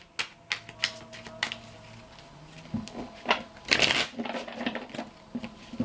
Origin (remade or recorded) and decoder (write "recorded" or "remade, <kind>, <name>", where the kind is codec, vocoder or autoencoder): recorded